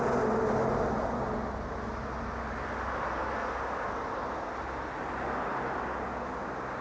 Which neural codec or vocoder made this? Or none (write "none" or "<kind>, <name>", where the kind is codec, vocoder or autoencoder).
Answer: none